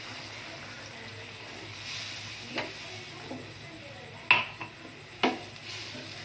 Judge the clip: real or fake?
real